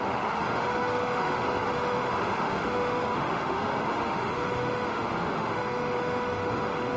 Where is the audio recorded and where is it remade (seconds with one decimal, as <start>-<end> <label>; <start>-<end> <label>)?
0.0-7.0 remade